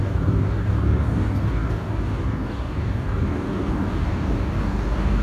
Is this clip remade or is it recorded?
remade